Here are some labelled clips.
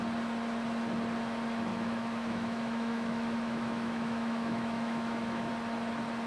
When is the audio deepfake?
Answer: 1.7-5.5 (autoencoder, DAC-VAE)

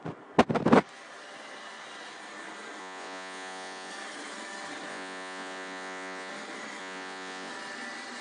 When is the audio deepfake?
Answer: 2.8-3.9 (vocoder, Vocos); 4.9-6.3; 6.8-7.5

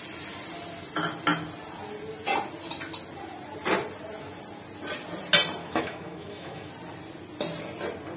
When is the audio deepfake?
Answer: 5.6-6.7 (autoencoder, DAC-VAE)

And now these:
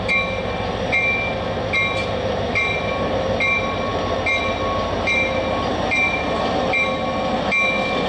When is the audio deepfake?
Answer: 5.7-6.6 (vocoder, BigVGAN v2)

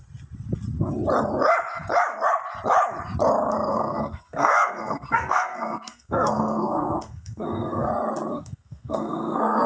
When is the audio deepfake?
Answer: 3.7-7.9 (codec, SNAC); 8.3-9.7

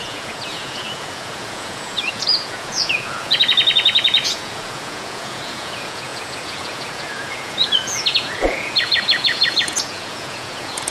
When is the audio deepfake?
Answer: 0.0-10.9 (vocoder, Vocos)